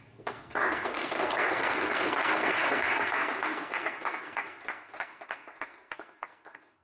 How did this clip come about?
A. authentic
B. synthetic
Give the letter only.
B